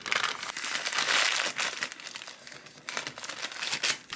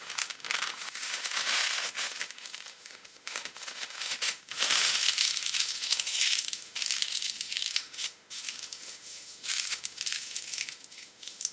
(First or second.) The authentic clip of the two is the first